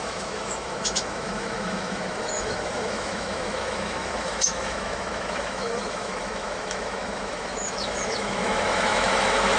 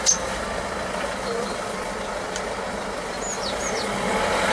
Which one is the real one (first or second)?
second